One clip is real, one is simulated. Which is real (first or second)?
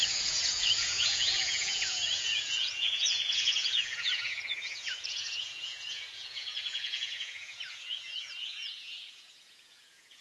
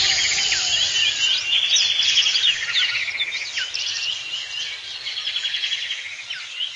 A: second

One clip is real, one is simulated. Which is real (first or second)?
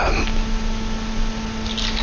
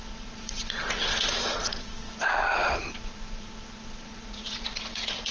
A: first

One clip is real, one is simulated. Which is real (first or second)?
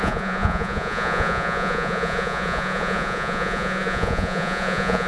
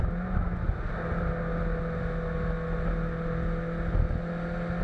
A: second